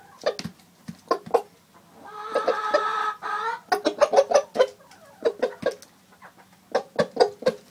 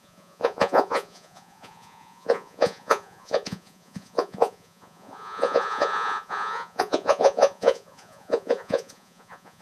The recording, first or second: first